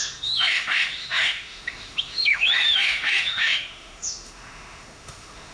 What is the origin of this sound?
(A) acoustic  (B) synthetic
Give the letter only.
B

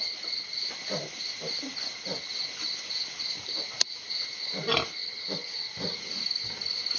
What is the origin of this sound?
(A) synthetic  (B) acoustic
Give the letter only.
B